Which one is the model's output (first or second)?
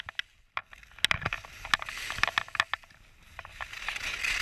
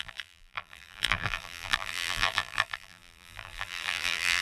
second